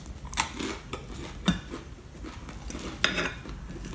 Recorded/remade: recorded